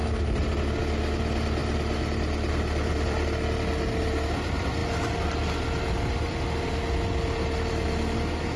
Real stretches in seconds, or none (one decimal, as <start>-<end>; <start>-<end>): 0.0-8.6